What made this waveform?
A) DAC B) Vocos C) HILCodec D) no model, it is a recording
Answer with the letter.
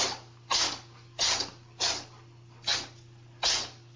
D